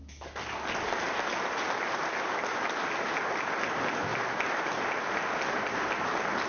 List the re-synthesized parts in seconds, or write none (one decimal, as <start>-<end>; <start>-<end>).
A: none